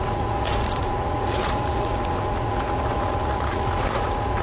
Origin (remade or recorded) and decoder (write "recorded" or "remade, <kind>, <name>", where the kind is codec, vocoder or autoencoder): remade, vocoder, Vocos